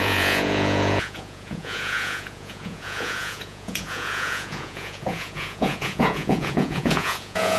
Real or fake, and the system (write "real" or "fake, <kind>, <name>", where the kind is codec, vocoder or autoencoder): fake, vocoder, Vocos